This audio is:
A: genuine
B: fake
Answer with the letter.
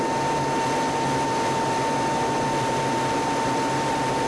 A